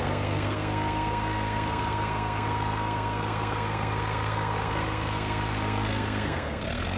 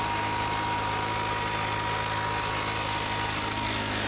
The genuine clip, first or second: second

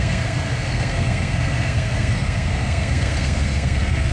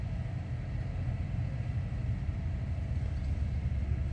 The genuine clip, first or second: second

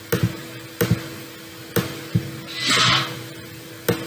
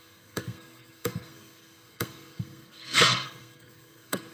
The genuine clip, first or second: first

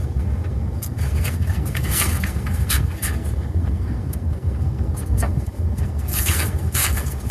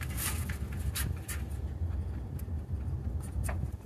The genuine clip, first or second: second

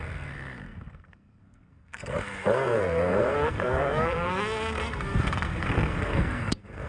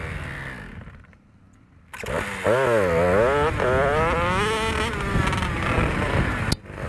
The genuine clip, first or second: second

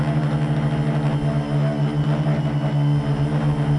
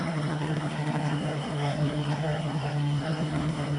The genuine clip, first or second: first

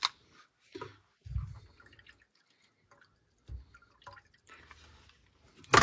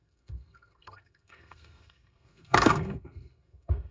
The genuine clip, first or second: first